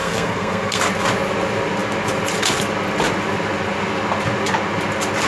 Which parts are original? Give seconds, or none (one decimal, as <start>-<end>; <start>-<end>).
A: 0.8-5.3